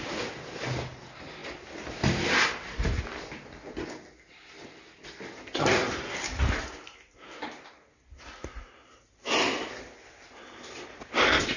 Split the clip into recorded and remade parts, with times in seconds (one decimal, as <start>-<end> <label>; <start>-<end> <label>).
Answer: 0.0-11.6 recorded